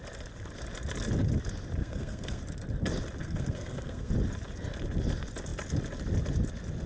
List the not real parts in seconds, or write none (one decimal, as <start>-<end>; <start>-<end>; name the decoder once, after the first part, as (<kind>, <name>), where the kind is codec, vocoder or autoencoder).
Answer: 1.8-2.4 (codec, SNAC); 3.2-4.1